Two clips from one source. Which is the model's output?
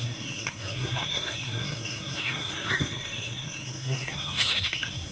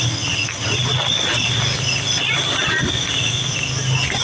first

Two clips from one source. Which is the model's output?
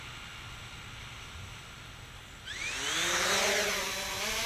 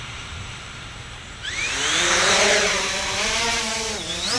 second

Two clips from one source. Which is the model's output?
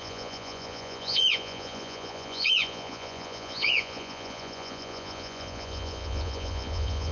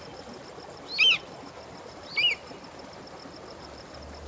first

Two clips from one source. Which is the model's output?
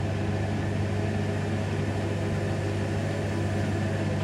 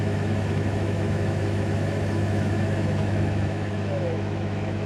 second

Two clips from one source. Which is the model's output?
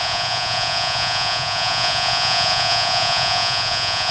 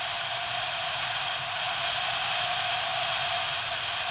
first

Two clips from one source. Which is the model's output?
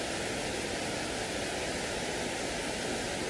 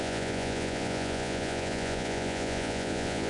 second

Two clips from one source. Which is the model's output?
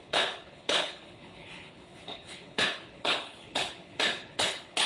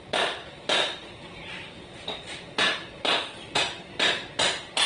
first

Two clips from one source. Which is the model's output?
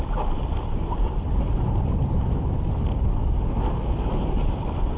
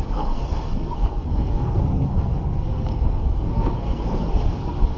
second